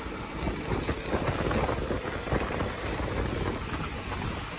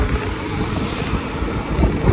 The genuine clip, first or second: first